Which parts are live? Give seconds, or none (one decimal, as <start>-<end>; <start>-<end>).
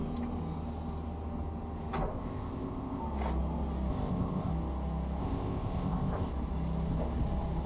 0.0-2.1; 3.0-3.9; 4.5-5.2; 6.3-7.7